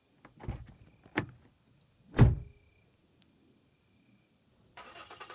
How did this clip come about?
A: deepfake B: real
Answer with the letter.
B